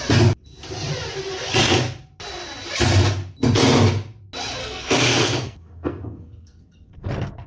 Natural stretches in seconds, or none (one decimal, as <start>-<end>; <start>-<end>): 0.0-4.6